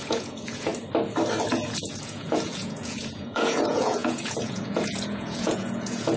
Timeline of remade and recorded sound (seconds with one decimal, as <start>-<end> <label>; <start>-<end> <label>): 0.0-0.7 remade; 0.7-1.5 recorded; 1.5-6.2 remade